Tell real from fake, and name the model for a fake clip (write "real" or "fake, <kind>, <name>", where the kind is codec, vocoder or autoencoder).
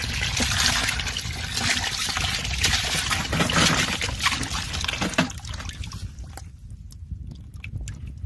real